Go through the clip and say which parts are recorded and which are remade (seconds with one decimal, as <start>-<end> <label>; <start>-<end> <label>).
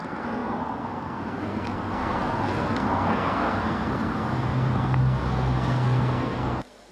0.0-6.9 remade